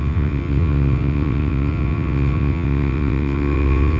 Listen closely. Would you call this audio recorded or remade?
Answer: remade